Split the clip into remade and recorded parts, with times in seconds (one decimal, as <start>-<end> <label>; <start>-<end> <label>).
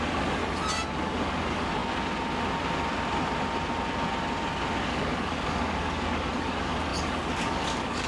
0.0-0.4 remade; 0.4-0.9 recorded; 0.9-1.8 remade; 1.8-4.8 recorded; 4.8-8.1 remade